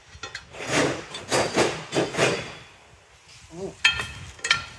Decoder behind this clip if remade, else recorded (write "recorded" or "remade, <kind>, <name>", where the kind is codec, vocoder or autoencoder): recorded